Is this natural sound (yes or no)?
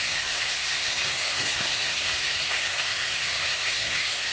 no